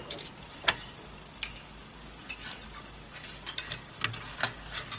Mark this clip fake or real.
real